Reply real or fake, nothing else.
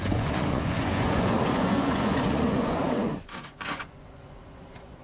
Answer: fake